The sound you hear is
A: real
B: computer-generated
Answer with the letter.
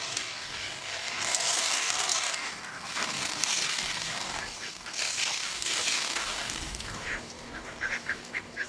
B